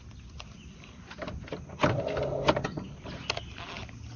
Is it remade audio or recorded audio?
recorded